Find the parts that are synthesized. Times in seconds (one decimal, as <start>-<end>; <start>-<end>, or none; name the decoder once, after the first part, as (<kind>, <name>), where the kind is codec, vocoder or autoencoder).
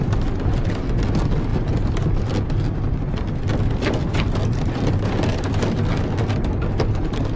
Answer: none